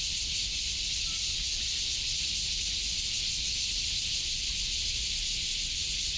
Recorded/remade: remade